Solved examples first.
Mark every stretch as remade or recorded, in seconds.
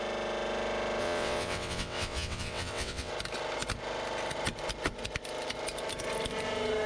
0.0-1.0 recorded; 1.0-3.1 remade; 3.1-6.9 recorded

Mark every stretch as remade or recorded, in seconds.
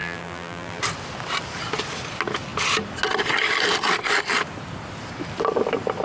0.0-0.8 remade; 0.8-6.0 recorded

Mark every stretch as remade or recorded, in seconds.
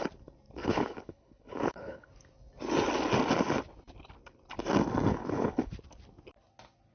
0.0-0.6 recorded; 0.6-2.1 remade; 2.1-5.1 recorded; 5.1-5.7 remade; 5.7-6.9 recorded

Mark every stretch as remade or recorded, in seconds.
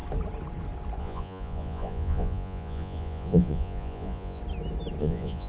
0.0-1.0 recorded; 1.0-4.4 remade; 4.4-5.0 recorded; 5.0-5.5 remade